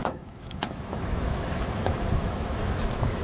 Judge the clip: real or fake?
fake